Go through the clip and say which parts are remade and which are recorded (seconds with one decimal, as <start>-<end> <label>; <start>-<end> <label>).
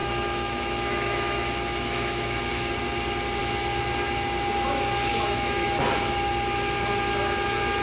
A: 0.0-2.7 remade; 2.7-5.1 recorded; 5.1-5.8 remade; 5.8-7.8 recorded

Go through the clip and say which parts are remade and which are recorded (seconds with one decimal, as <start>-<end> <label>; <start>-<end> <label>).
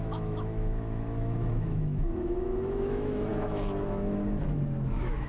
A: 0.0-5.3 remade